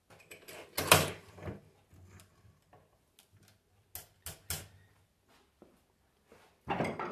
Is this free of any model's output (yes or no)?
yes